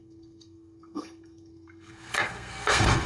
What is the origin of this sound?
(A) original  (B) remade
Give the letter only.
B